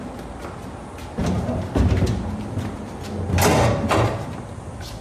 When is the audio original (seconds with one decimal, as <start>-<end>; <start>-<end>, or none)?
0.0-5.0